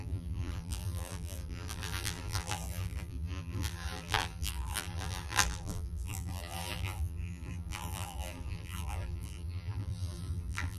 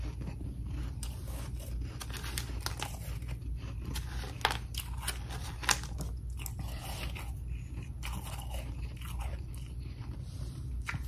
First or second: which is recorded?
second